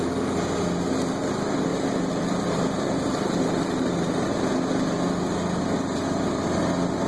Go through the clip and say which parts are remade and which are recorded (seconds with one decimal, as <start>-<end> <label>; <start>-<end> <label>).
0.0-1.7 recorded; 1.7-4.3 remade; 4.3-7.1 recorded